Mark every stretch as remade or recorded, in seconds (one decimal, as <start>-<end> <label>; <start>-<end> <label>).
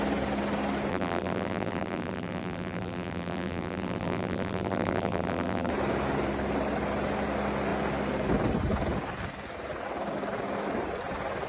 0.0-0.9 recorded; 0.9-5.7 remade; 5.7-11.5 recorded